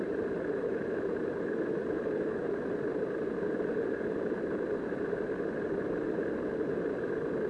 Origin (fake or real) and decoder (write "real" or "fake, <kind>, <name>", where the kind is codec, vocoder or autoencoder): real